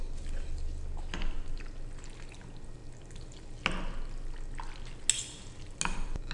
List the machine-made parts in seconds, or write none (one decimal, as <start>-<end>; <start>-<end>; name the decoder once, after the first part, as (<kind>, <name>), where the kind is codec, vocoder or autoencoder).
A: none